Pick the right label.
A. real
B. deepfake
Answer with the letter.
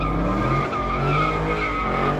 A